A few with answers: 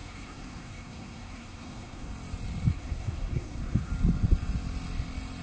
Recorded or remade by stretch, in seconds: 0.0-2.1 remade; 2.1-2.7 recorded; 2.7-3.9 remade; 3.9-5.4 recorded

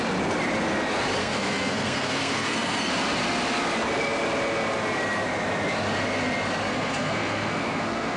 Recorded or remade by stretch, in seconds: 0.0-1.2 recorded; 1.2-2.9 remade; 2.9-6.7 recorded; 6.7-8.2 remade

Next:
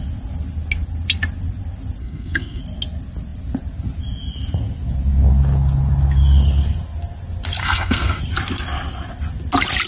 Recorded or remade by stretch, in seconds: 0.0-2.0 recorded; 2.0-2.6 remade; 2.6-7.6 recorded; 7.6-8.2 remade; 8.2-9.9 recorded